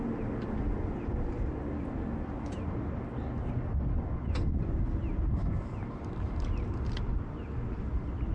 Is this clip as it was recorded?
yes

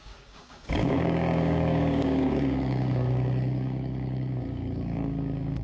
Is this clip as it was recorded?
no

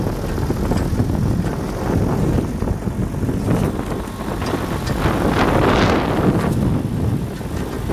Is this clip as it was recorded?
yes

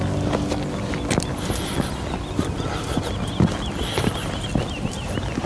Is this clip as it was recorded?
yes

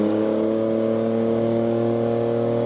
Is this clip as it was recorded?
no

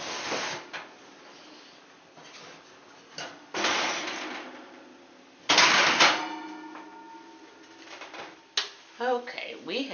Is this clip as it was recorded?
yes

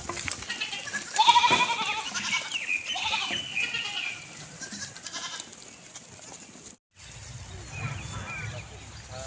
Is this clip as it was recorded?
yes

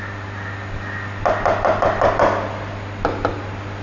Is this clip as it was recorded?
yes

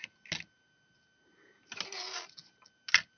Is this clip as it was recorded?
yes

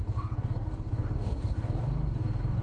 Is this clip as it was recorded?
no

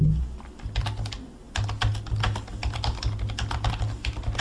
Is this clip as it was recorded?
yes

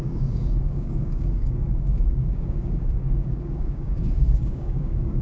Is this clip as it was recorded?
no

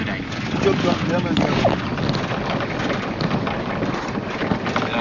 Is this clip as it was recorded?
yes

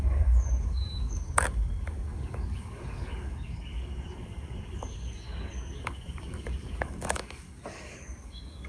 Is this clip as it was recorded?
no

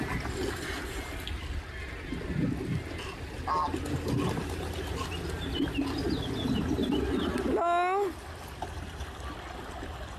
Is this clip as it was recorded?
yes